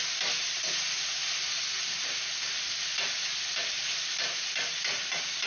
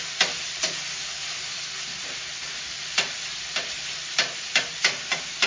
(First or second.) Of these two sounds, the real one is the first